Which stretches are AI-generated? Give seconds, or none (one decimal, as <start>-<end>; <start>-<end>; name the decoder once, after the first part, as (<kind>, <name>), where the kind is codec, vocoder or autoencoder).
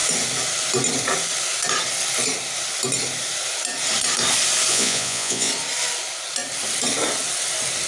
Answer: 4.7-5.5 (vocoder, Vocos)